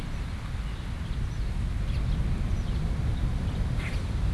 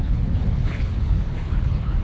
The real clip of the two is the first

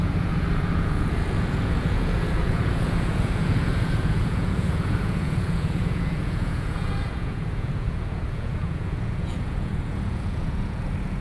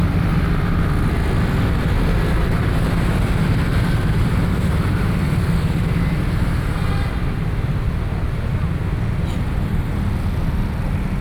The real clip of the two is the second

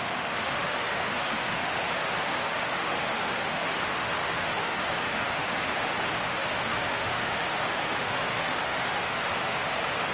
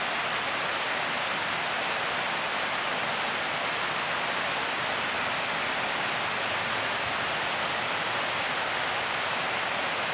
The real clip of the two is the second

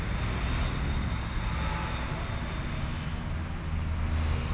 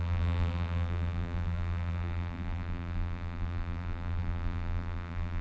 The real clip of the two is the first